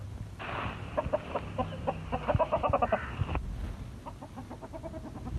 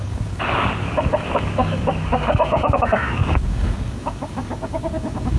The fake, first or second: second